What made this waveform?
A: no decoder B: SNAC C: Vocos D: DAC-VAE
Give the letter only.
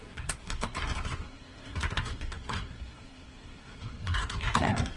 B